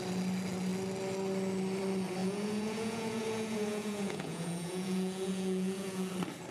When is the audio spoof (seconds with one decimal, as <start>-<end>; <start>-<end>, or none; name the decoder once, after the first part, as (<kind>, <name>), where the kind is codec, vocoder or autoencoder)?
2.2-6.1 (vocoder, Vocos)